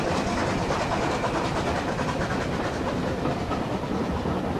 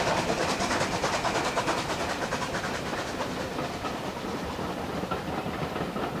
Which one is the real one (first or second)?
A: first